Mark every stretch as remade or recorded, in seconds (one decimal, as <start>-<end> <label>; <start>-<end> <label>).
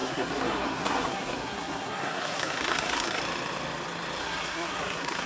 0.0-3.2 remade; 3.2-4.2 recorded; 4.2-5.3 remade